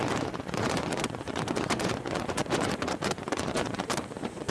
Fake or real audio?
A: fake